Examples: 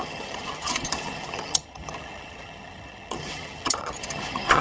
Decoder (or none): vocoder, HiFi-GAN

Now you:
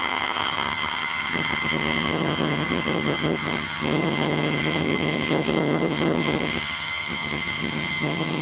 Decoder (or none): vocoder, HiFi-GAN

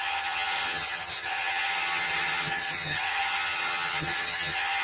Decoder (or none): vocoder, HiFi-GAN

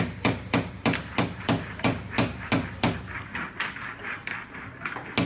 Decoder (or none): none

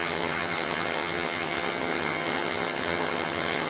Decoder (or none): vocoder, HiFi-GAN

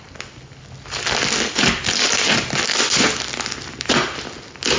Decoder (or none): none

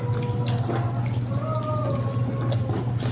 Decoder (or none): none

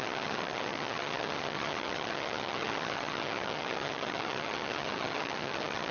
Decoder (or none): vocoder, HiFi-GAN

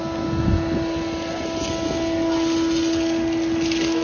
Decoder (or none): none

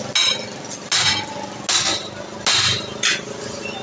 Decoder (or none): none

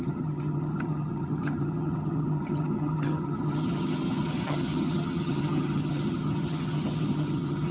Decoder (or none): vocoder, HiFi-GAN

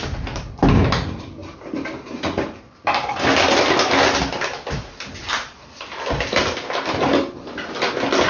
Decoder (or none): none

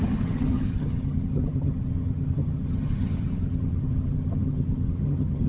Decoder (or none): vocoder, HiFi-GAN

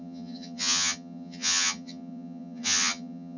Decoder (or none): vocoder, HiFi-GAN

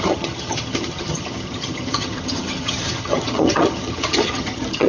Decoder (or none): vocoder, HiFi-GAN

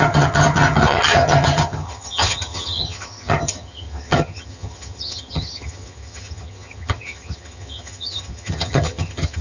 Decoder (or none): vocoder, HiFi-GAN